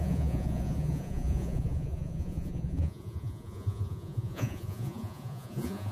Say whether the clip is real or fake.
fake